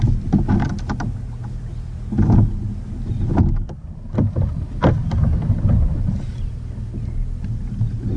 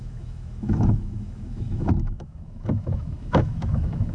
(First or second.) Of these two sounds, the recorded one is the first